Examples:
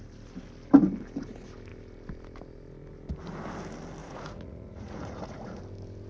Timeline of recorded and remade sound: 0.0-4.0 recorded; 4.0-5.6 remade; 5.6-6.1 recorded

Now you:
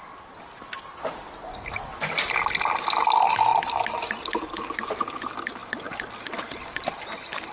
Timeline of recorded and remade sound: 0.0-7.5 recorded

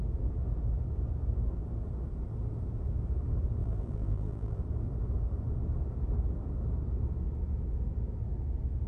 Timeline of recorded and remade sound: 0.0-3.6 recorded; 3.6-4.6 remade; 4.6-8.9 recorded